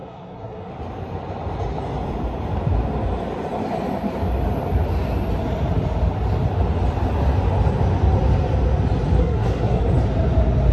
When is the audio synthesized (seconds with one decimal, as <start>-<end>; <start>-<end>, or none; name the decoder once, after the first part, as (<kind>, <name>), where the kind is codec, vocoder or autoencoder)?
0.0-0.7 (codec, SNAC); 9.2-9.8